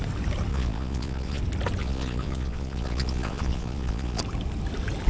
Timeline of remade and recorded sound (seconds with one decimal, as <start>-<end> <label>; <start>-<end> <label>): 0.0-0.5 recorded; 0.5-1.4 remade; 1.4-1.8 recorded; 1.8-4.2 remade; 4.2-5.1 recorded